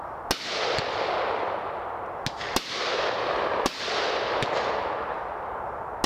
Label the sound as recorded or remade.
recorded